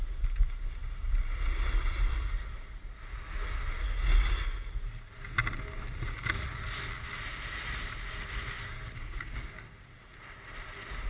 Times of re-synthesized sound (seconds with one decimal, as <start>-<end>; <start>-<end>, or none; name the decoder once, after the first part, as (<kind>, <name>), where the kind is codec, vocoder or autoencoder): 8.8-9.8 (codec, DAC)